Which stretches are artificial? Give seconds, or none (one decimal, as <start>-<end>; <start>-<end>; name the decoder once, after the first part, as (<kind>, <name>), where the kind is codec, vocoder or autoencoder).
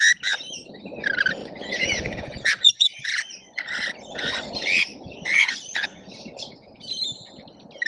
1.4-4.5 (vocoder, Vocos); 4.9-6.1